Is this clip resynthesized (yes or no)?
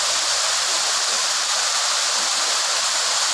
no